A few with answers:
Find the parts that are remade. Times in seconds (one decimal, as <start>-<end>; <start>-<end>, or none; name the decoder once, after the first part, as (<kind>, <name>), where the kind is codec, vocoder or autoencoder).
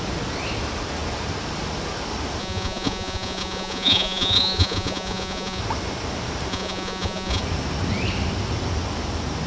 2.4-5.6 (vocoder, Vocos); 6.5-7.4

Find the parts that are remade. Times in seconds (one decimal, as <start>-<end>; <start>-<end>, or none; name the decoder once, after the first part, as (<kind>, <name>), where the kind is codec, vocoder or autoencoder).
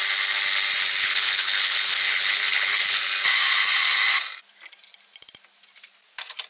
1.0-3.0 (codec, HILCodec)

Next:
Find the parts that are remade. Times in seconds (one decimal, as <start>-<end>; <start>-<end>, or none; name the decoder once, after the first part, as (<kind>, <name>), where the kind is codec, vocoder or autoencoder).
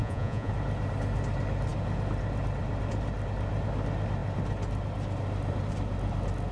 0.0-0.5 (vocoder, Vocos)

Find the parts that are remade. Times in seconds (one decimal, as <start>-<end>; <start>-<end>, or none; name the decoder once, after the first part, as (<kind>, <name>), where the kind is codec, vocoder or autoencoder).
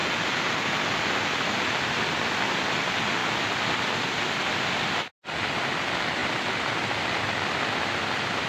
none